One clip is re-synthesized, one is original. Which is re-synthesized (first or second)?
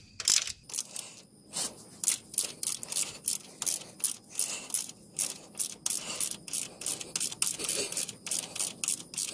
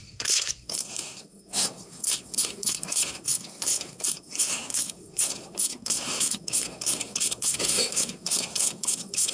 second